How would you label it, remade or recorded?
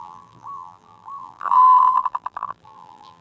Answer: remade